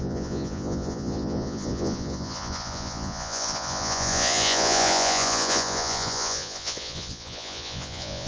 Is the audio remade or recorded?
remade